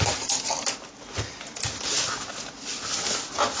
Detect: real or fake real